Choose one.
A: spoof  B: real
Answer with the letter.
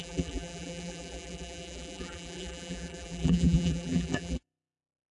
A